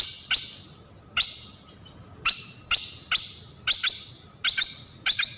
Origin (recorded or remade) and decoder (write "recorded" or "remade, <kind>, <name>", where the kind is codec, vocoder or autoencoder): recorded